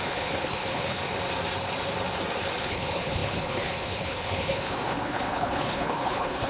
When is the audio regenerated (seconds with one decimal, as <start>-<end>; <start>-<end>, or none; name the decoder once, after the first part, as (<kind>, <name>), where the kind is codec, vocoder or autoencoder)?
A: 0.0-1.0 (codec, HILCodec); 2.6-6.5